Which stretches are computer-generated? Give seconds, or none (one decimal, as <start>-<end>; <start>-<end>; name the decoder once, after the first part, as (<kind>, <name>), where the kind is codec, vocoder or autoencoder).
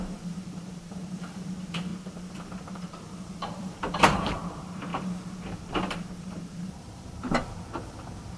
0.0-8.4 (vocoder, BigVGAN v2)